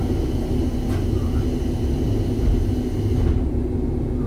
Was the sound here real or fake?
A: real